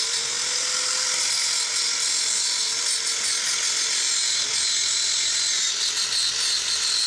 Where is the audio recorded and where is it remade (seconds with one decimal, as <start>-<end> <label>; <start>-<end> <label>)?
0.0-7.1 recorded

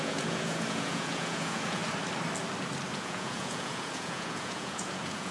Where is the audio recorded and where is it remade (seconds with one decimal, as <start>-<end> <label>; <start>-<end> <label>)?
0.0-1.8 remade; 1.8-2.9 recorded; 2.9-5.3 remade

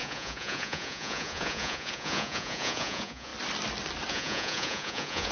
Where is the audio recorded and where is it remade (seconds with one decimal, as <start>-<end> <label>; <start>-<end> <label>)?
0.0-3.3 remade; 3.3-4.1 recorded; 4.1-5.3 remade

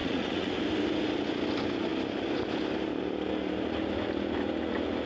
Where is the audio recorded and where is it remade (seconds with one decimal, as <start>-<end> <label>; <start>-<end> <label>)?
0.0-0.5 remade; 0.5-5.1 recorded

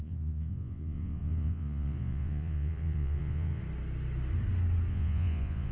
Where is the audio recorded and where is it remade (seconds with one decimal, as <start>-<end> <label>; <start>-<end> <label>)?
0.0-3.6 remade; 3.6-4.9 recorded; 4.9-5.7 remade

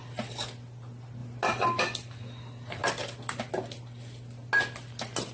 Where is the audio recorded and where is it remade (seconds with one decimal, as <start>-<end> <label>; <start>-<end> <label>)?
0.0-5.3 recorded

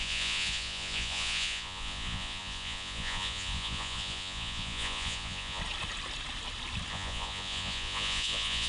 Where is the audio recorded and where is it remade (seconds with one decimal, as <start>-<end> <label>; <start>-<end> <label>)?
0.0-5.6 remade; 5.6-6.9 recorded; 6.9-8.7 remade